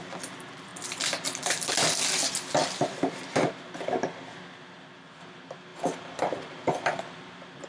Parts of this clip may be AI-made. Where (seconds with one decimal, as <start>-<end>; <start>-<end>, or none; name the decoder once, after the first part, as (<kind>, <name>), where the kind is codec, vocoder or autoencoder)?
none